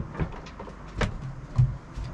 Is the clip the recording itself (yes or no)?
yes